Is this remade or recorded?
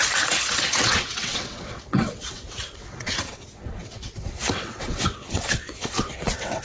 remade